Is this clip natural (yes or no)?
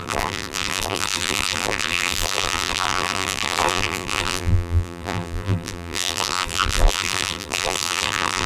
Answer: no